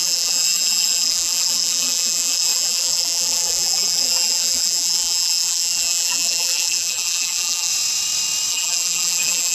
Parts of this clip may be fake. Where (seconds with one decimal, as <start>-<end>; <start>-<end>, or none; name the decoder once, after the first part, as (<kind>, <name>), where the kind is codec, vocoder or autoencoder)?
0.0-7.7 (vocoder, BigVGAN v2); 8.5-9.5